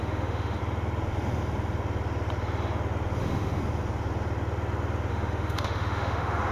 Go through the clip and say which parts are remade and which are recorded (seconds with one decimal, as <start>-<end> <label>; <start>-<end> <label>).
0.0-0.6 remade; 0.6-3.2 recorded; 3.2-3.6 remade; 3.6-5.1 recorded; 5.1-6.5 remade